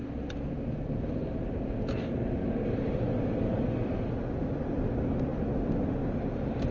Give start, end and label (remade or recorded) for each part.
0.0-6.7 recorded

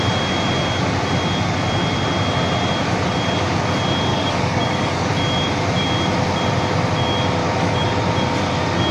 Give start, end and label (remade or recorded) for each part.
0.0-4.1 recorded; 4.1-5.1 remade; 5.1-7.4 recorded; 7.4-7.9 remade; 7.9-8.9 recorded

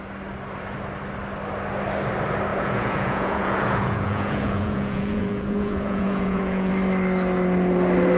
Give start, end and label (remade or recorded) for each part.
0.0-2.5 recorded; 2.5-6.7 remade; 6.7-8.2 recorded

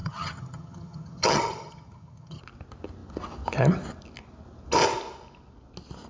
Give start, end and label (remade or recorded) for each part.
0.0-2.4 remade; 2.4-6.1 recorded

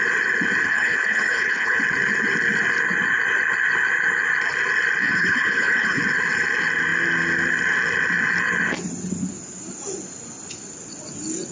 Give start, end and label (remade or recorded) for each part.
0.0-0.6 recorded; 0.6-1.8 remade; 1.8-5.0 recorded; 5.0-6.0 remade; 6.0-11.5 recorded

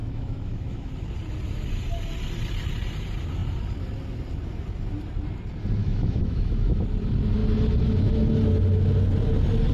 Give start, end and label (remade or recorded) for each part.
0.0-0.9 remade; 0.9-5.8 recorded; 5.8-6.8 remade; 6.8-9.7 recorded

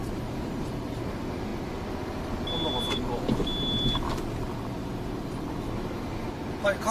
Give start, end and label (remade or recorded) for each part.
0.0-0.7 remade; 0.7-6.9 recorded